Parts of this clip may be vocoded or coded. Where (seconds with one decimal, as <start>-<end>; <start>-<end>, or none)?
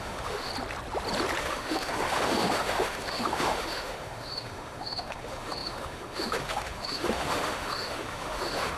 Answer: 0.0-0.5; 1.4-8.8